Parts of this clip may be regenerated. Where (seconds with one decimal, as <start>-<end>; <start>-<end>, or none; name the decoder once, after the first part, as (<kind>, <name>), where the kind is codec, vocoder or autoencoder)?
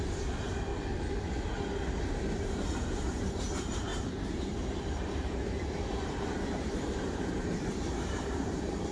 0.0-0.7 (vocoder, BigVGAN v2); 2.4-8.9